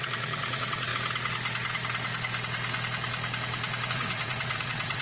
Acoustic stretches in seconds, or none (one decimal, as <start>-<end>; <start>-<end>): 0.9-3.9